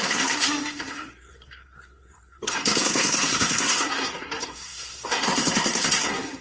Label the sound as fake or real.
fake